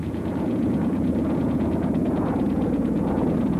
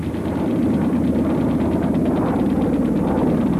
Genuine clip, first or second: second